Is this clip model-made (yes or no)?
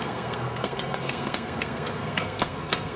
yes